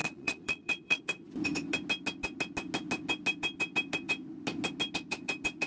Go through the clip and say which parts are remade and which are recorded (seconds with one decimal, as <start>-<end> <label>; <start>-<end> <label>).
0.0-1.0 remade; 1.0-5.7 recorded